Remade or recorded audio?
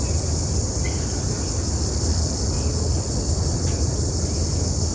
recorded